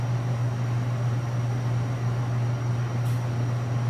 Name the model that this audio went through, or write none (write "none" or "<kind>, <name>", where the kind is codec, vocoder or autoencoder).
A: none